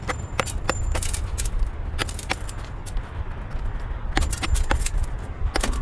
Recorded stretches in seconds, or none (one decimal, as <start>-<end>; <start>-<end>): 0.0-5.8